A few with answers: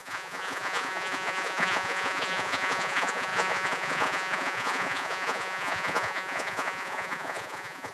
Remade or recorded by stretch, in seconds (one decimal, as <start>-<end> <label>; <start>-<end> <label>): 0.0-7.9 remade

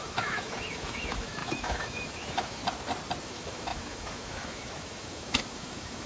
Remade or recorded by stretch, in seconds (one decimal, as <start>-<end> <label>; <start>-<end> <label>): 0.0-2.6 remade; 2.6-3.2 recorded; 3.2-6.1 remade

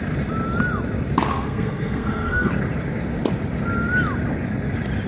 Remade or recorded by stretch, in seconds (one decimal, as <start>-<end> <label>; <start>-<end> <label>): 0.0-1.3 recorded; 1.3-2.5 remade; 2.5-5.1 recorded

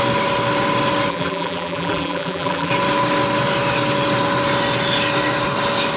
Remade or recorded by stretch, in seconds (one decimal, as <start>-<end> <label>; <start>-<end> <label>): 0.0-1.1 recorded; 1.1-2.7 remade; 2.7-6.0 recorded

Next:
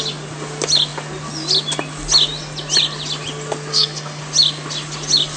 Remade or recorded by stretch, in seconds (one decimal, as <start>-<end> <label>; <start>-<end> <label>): 0.0-3.7 recorded; 3.7-4.2 remade; 4.2-5.4 recorded

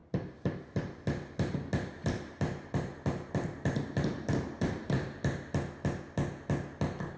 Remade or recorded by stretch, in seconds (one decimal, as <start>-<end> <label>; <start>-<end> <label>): 0.0-0.8 remade; 0.8-2.0 recorded; 2.0-5.5 remade; 5.5-7.2 recorded

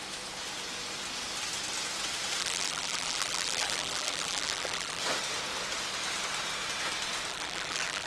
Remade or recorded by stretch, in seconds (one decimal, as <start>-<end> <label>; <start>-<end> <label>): 0.0-2.4 recorded; 2.4-5.0 remade; 5.0-7.3 recorded; 7.3-8.1 remade